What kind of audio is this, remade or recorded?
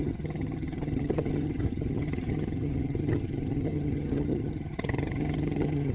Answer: remade